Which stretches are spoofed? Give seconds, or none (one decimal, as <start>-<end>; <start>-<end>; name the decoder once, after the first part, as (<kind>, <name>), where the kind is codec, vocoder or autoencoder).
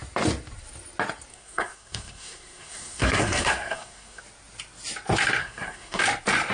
1.3-4.2 (codec, SNAC); 5.4-6.0